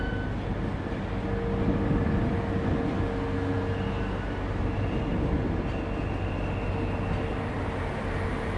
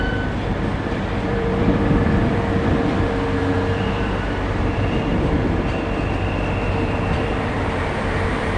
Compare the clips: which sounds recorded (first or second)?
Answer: first